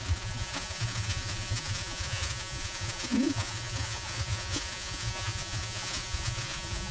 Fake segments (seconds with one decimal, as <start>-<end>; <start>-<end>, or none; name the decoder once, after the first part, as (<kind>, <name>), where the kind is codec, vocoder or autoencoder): 0.0-6.9 (vocoder, Vocos)